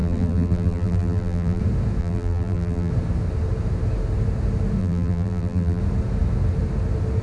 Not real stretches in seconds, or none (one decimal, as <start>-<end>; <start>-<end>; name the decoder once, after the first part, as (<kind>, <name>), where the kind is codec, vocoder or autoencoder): 0.0-1.6 (vocoder, BigVGAN v2); 2.0-2.9; 4.8-5.8